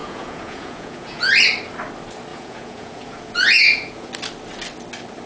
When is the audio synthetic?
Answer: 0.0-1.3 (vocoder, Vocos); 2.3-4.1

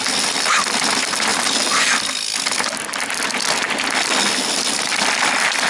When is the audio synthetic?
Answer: none